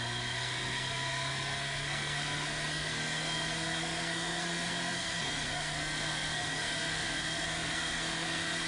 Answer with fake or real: fake